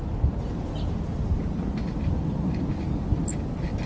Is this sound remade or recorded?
recorded